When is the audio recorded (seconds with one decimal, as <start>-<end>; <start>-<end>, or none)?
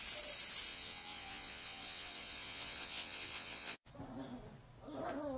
0.0-0.7; 3.9-5.4